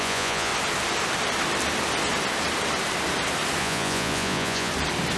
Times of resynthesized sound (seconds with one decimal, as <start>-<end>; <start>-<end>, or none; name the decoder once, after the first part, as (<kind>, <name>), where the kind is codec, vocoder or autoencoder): 0.0-0.5 (vocoder, Vocos); 3.6-4.7